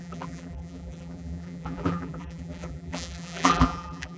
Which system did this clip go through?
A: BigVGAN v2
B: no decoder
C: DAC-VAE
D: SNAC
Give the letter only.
A